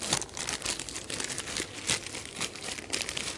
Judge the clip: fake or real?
real